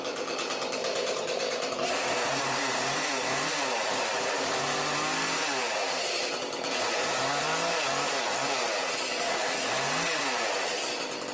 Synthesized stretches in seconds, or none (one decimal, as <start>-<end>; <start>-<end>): 0.8-4.6; 5.6-7.2